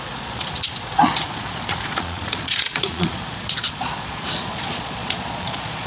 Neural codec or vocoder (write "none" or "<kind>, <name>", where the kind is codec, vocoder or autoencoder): vocoder, Vocos